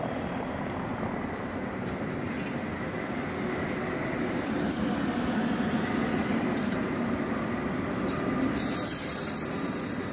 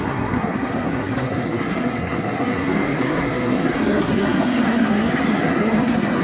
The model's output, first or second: second